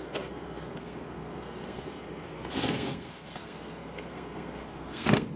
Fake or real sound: fake